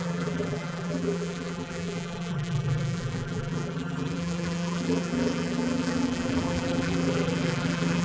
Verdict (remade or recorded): remade